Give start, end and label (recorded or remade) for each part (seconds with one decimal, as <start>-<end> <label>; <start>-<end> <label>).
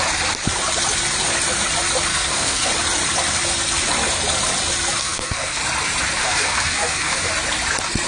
0.0-2.1 recorded; 2.1-2.7 remade; 2.7-5.0 recorded; 5.0-5.6 remade; 5.6-6.2 recorded; 6.2-7.3 remade; 7.3-8.1 recorded